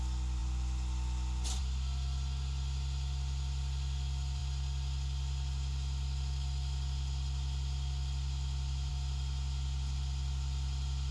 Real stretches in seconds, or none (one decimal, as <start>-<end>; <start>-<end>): 0.0-11.1